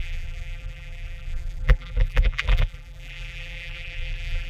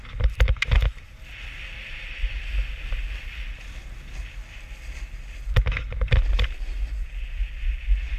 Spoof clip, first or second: first